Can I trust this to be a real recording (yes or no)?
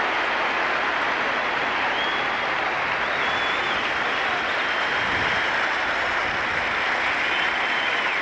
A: yes